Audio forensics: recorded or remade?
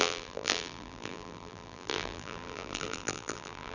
remade